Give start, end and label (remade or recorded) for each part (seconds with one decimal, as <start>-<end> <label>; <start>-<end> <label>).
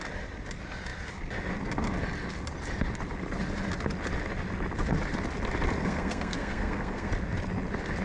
0.0-5.8 recorded; 5.8-7.1 remade; 7.1-8.0 recorded